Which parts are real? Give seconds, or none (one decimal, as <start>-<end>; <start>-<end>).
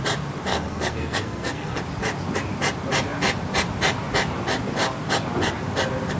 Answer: 0.0-0.5; 1.8-6.2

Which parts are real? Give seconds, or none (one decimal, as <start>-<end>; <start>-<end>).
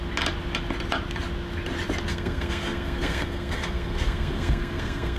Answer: 0.0-2.1